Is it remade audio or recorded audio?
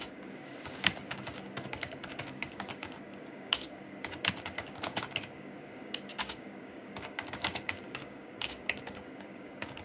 remade